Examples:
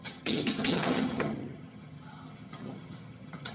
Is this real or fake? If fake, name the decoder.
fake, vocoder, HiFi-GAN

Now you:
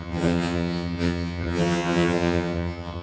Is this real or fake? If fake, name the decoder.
fake, vocoder, HiFi-GAN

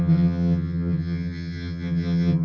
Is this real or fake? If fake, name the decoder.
fake, vocoder, HiFi-GAN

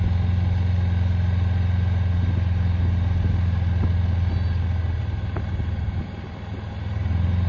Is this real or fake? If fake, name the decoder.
real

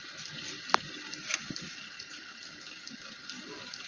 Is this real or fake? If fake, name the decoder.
real